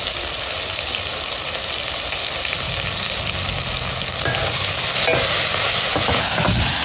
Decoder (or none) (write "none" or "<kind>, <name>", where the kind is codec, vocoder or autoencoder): none